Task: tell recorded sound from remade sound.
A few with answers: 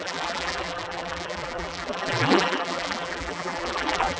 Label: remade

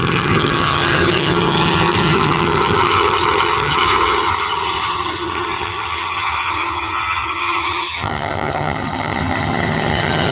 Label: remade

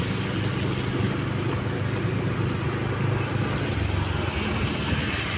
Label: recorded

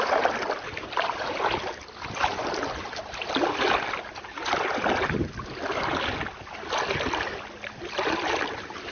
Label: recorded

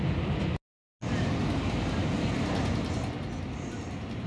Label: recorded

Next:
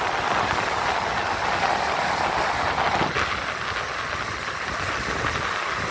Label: recorded